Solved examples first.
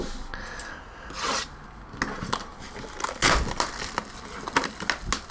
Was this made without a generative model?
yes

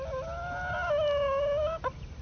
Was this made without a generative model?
yes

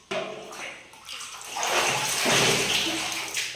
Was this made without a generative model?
yes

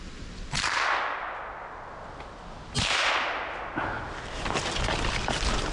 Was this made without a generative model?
yes